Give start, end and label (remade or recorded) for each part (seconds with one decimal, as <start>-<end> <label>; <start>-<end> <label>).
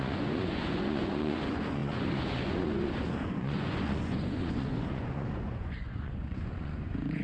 0.0-7.2 remade